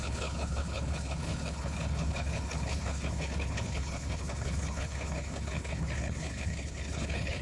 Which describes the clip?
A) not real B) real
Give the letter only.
A